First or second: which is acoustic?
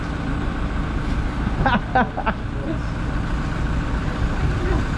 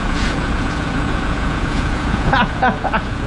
first